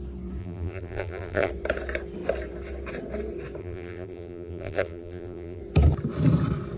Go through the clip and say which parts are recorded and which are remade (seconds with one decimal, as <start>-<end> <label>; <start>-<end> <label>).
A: 0.0-0.4 recorded; 0.4-1.5 remade; 1.5-3.6 recorded; 3.6-5.6 remade; 5.6-6.8 recorded